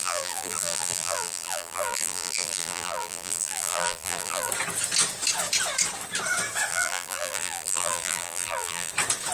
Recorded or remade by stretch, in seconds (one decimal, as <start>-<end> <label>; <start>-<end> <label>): 0.0-4.5 remade; 4.5-6.7 recorded; 6.7-8.9 remade; 8.9-9.3 recorded